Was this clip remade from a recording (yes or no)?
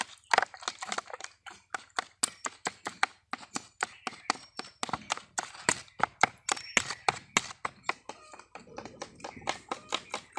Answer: no